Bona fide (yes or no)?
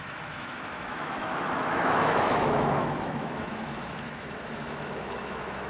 no